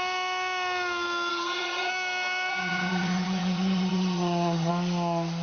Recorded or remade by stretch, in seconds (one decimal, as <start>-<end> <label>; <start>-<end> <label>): 0.0-1.3 recorded; 1.3-1.9 remade; 1.9-2.5 recorded; 2.5-4.7 remade; 4.7-5.4 recorded